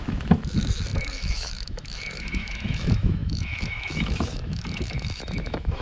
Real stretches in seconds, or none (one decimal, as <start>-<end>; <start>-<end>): none